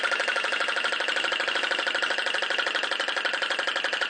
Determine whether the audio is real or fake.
real